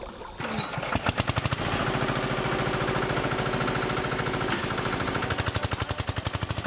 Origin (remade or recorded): recorded